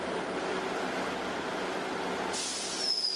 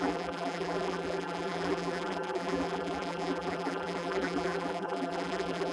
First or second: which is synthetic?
second